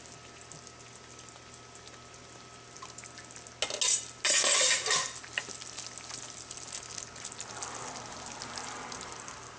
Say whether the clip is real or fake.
real